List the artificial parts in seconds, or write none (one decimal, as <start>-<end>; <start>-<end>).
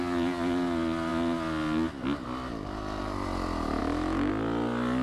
3.8-4.3